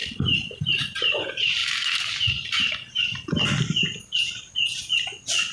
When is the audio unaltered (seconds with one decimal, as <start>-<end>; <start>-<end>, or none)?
0.0-5.5